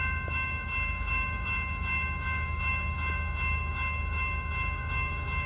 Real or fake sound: fake